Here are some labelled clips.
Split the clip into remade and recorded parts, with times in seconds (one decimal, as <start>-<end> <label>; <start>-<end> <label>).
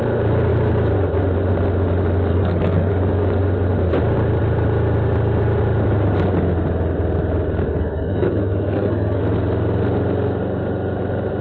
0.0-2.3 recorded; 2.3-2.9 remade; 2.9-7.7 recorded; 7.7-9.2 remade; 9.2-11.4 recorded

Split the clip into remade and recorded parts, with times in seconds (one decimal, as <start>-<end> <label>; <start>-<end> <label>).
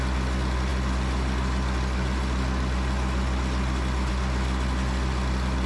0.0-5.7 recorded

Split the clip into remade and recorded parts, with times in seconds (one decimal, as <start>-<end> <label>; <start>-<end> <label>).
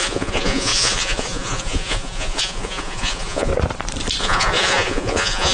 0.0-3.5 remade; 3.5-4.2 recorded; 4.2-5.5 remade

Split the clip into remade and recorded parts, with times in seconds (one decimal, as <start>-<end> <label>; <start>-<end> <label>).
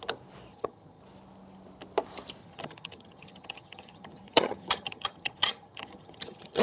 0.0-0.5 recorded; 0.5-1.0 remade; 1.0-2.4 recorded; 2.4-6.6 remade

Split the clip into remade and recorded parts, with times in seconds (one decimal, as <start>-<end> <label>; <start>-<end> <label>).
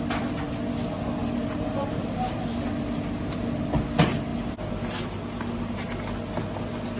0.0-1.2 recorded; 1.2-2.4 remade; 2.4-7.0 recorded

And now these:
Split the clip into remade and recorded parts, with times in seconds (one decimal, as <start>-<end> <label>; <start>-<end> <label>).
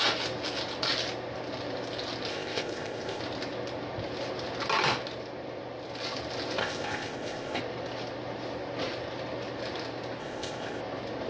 0.0-2.3 recorded; 2.3-3.2 remade; 3.2-6.6 recorded; 6.6-7.6 remade; 7.6-10.2 recorded; 10.2-10.8 remade; 10.8-11.3 recorded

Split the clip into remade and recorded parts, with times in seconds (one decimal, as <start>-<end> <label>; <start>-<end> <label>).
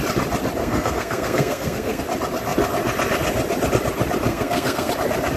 0.0-0.6 recorded; 0.6-2.0 remade; 2.0-4.3 recorded; 4.3-4.9 remade; 4.9-5.4 recorded